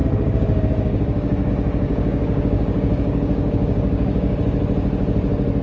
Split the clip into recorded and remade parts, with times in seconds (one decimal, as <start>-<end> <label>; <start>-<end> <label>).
0.0-1.5 remade; 1.5-1.9 recorded; 1.9-4.4 remade; 4.4-5.6 recorded